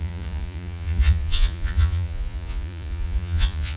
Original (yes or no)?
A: no